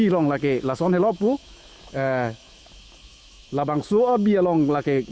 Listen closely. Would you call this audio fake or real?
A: fake